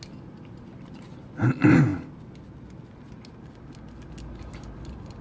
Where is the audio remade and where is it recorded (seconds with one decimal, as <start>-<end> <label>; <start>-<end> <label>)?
0.0-5.2 recorded